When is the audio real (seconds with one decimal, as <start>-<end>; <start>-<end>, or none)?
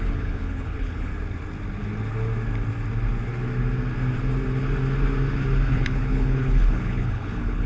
1.1-5.7